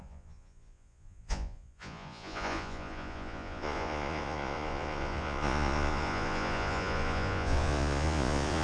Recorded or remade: remade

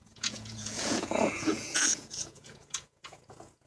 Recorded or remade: remade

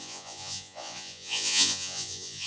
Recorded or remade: remade